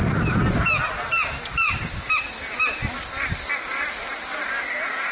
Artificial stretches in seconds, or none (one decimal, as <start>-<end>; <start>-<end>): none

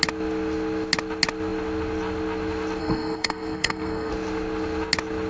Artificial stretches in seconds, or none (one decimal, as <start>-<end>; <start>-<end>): 2.8-4.1

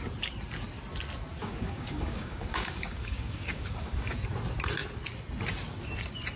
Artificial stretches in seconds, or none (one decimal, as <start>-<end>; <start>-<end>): 1.4-4.1

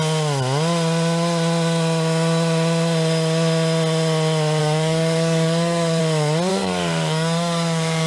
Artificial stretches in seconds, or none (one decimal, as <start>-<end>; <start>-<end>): 4.6-6.0; 6.5-8.1

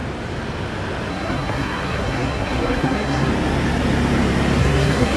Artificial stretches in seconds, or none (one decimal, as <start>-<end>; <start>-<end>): 1.1-3.3; 4.6-5.2